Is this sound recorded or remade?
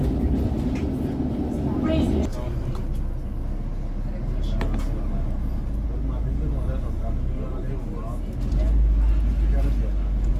recorded